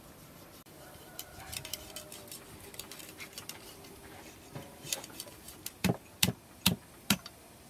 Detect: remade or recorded remade